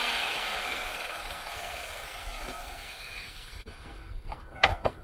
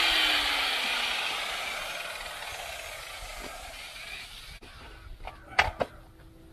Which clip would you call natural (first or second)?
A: second